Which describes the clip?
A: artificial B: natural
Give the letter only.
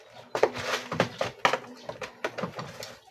B